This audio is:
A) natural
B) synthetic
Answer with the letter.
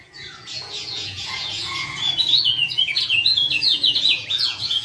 B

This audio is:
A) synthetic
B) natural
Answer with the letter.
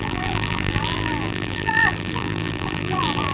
A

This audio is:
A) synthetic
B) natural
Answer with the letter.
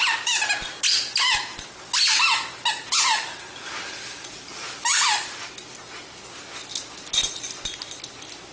B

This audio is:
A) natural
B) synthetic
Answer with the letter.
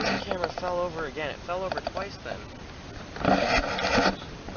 A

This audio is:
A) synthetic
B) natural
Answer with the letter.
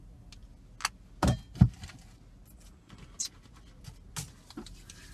B